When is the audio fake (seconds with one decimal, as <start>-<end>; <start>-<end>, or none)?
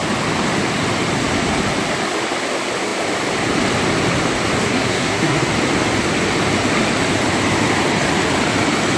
4.6-5.5